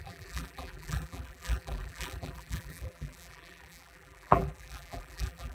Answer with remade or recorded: remade